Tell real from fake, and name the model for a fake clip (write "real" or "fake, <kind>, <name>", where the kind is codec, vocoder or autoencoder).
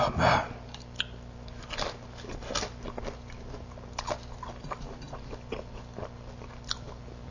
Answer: real